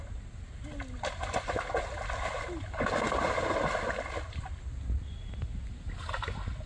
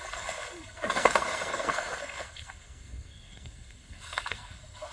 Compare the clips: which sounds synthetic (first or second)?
second